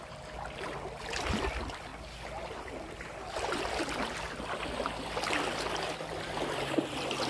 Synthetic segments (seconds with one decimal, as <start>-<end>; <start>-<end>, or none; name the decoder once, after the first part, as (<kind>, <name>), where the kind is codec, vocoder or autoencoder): none